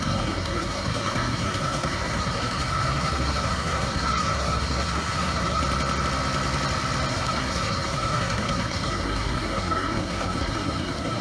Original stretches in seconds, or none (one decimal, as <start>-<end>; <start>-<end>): 5.6-7.1